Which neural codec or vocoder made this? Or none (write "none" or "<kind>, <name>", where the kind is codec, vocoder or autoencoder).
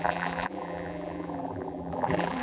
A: vocoder, BigVGAN v2